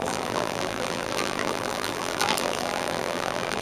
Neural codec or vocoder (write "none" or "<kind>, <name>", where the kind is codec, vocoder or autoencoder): vocoder, BigVGAN v2